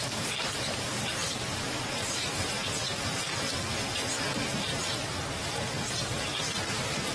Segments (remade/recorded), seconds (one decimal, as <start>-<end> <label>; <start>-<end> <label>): 0.0-2.6 remade; 2.6-3.3 recorded; 3.3-4.7 remade; 4.7-5.9 recorded; 5.9-7.1 remade